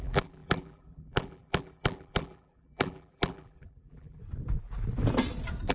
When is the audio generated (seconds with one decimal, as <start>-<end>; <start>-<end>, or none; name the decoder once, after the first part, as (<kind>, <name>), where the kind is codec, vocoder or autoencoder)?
0.0-4.2 (vocoder, BigVGAN v2)